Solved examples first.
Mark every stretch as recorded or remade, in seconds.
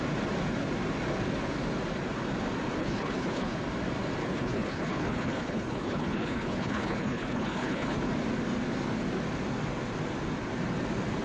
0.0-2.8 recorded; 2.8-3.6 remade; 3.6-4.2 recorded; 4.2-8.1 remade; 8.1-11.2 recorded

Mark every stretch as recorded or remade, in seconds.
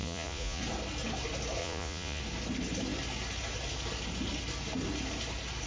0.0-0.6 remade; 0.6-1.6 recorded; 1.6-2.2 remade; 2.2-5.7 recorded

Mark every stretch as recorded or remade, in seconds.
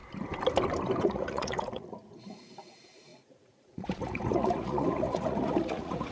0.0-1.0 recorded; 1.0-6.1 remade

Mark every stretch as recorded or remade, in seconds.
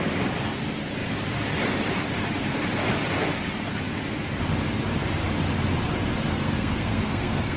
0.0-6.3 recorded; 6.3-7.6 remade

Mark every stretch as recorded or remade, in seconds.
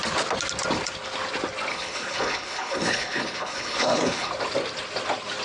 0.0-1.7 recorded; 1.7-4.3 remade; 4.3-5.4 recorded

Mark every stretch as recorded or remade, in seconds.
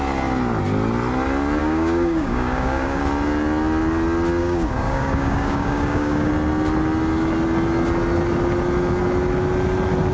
0.0-1.6 recorded; 1.6-3.0 remade; 3.0-4.4 recorded; 4.4-6.3 remade; 6.3-10.1 recorded